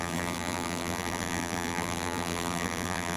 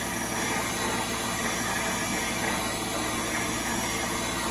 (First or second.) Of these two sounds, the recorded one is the second